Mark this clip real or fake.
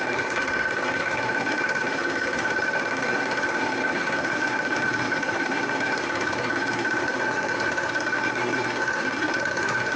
fake